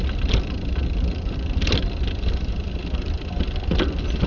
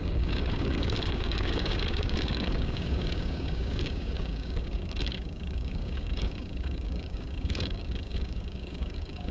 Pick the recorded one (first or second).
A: first